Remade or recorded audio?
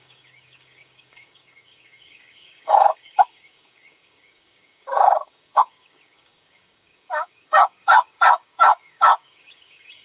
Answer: remade